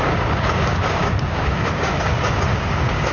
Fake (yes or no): yes